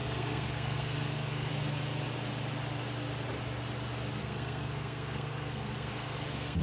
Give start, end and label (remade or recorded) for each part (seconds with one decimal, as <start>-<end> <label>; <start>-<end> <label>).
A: 0.0-1.5 remade; 1.5-4.2 recorded; 4.2-6.6 remade